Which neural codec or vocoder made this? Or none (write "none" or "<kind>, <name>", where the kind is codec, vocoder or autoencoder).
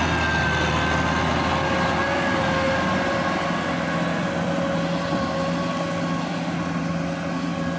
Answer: none